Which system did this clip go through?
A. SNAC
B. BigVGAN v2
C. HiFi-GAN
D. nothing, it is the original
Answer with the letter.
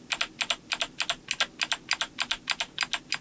D